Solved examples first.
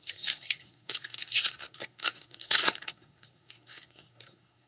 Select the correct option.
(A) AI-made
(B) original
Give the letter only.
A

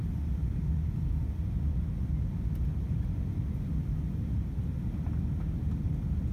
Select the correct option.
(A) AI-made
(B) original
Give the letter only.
B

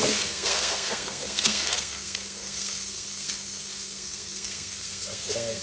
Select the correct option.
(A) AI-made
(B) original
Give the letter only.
A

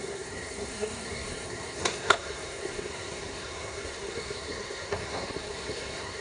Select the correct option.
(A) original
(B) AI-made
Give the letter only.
B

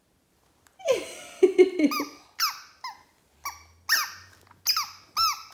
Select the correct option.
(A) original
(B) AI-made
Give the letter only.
A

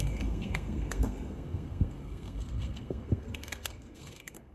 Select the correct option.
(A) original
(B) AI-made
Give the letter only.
B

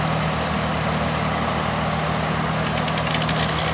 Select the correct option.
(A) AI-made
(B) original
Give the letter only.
B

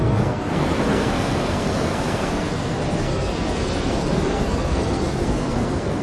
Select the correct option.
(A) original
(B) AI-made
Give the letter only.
B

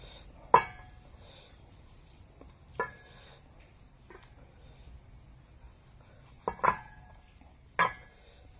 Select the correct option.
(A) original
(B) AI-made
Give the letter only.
A